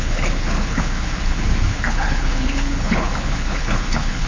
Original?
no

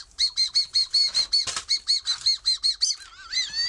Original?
yes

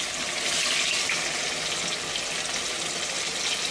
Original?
yes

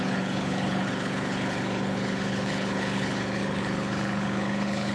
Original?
no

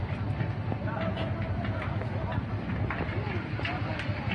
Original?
yes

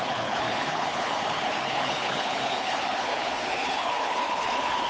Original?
no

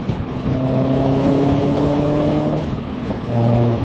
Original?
no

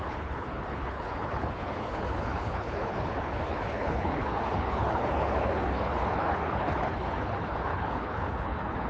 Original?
no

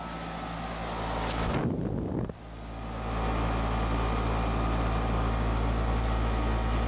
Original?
yes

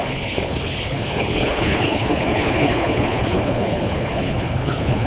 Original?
no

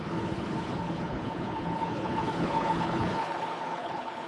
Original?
no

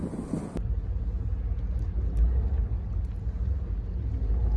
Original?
yes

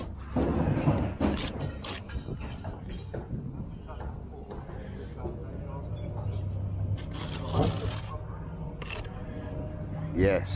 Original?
yes